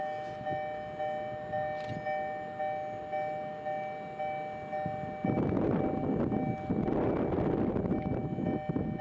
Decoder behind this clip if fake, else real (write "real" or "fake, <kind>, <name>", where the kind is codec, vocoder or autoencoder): real